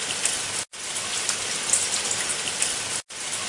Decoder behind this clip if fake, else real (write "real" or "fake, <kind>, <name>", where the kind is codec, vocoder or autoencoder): real